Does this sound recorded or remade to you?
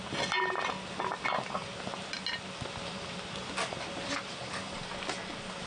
recorded